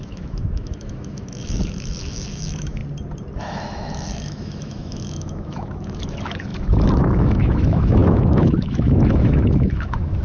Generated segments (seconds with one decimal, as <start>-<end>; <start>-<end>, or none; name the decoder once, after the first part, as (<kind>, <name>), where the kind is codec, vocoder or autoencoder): 0.0-2.8 (autoencoder, DAC-VAE); 3.4-10.2